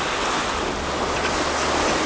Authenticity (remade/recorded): recorded